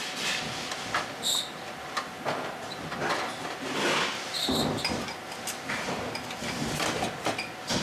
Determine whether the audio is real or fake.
real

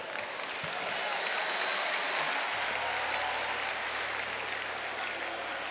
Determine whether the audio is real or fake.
real